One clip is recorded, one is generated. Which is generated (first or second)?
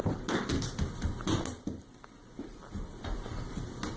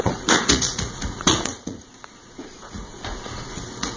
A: second